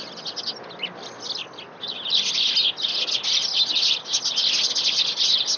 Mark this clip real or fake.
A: real